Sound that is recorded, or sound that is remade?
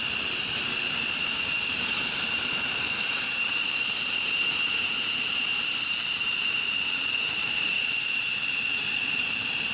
remade